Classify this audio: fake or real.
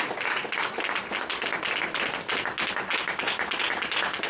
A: real